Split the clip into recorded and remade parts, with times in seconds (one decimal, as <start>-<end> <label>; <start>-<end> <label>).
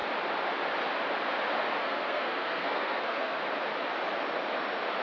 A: 0.0-1.8 recorded; 1.8-3.4 remade; 3.4-5.0 recorded